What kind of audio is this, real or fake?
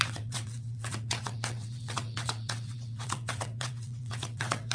fake